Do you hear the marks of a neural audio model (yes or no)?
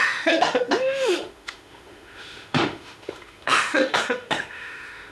yes